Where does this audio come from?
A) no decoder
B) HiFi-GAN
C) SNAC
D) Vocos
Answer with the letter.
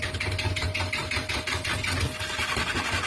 A